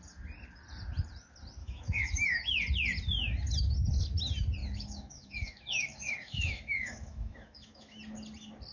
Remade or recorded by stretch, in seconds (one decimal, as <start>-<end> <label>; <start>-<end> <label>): 0.0-1.6 recorded; 1.6-2.6 remade; 2.6-4.6 recorded; 4.6-8.0 remade; 8.0-8.7 recorded